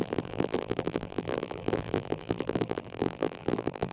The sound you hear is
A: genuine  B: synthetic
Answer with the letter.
B